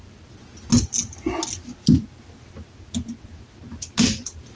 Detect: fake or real real